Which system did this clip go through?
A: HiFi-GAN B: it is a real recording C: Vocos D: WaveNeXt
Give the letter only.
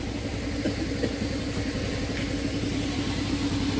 B